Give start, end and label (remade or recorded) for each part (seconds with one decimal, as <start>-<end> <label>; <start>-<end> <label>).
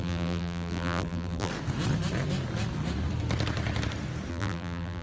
0.0-1.5 remade; 1.5-4.3 recorded; 4.3-5.0 remade